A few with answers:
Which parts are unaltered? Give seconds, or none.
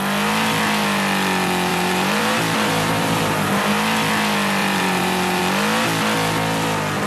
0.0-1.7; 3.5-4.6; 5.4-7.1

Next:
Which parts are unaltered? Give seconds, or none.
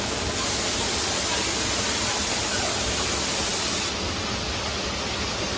0.0-5.6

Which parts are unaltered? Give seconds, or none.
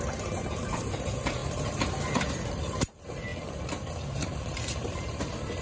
none